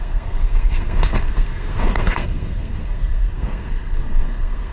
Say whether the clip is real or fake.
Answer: fake